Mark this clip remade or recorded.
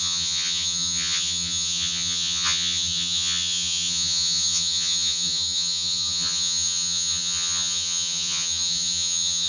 remade